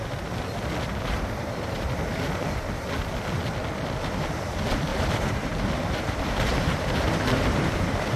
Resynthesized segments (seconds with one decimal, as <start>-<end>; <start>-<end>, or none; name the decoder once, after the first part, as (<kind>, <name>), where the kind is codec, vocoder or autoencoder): 0.9-1.9 (vocoder, BigVGAN v2); 4.9-8.2